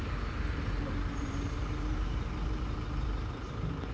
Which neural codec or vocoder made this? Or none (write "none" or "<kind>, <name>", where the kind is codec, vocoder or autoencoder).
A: vocoder, BigVGAN v2